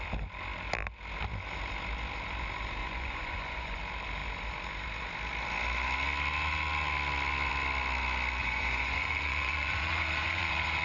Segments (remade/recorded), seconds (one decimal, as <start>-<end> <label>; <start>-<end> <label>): 0.0-2.8 recorded; 2.8-3.8 remade; 3.8-8.4 recorded; 8.4-10.8 remade